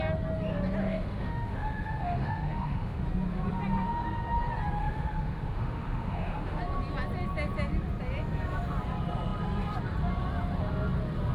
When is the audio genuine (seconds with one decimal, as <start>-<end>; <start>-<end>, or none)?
0.0-0.8; 3.0-4.8; 6.6-11.3